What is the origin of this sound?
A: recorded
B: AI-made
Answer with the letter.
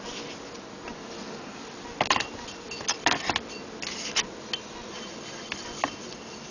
A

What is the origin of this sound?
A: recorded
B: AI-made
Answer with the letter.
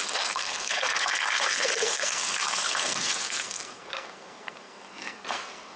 B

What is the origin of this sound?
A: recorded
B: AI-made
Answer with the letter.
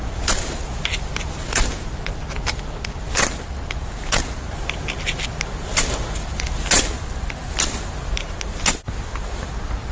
A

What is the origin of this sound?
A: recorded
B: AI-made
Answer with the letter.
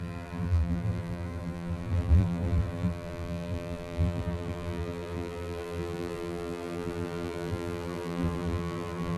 B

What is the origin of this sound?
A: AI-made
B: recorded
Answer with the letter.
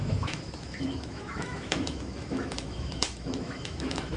A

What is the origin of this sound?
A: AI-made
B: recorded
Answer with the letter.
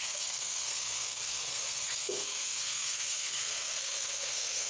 A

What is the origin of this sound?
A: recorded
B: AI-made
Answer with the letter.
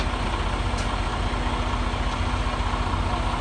A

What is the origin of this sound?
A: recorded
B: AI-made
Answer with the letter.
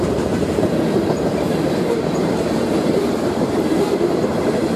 B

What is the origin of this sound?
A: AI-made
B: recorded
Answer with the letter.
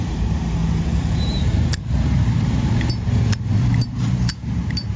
A